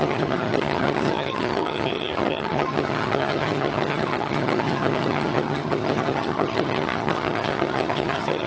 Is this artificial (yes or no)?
yes